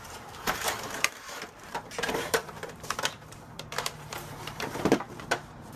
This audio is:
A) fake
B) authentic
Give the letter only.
A